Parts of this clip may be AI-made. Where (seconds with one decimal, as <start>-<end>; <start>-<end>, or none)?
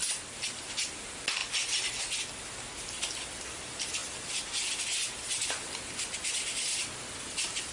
1.4-2.0